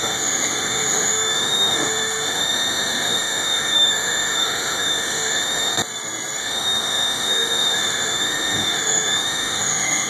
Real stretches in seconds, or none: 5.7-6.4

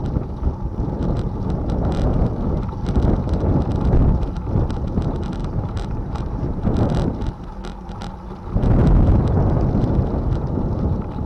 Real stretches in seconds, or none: 0.0-5.4; 6.6-11.3

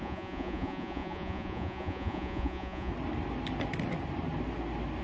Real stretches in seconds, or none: 2.9-5.0

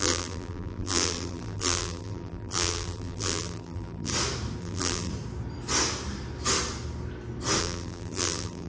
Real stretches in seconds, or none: 4.1-4.6; 5.1-7.6

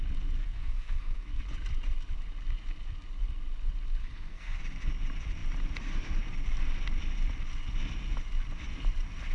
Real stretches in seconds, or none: 0.0-0.4; 1.4-4.0; 4.6-9.3

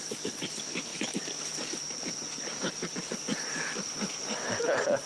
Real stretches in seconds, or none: 0.0-0.9; 3.9-5.1

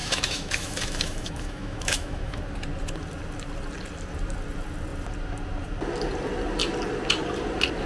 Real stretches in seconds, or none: 2.4-7.9

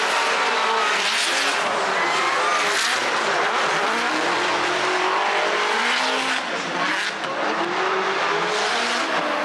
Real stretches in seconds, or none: 0.0-9.4